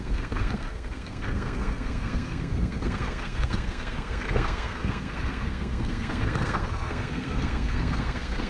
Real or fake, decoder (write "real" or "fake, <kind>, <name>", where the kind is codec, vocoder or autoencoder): fake, codec, SNAC